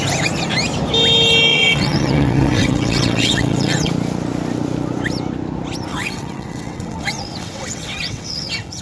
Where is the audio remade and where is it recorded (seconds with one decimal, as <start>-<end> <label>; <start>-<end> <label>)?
0.0-1.5 recorded; 1.5-3.9 remade; 3.9-5.9 recorded; 5.9-8.8 remade